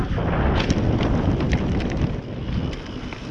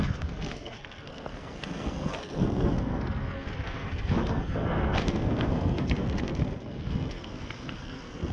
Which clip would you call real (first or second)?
first